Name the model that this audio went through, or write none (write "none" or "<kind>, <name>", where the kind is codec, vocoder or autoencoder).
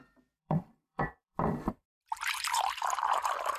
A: vocoder, BigVGAN v2